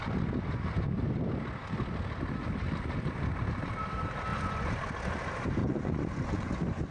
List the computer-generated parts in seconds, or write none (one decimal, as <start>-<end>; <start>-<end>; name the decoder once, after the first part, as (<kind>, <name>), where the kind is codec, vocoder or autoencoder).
4.3-4.9 (vocoder, Vocos); 5.6-6.5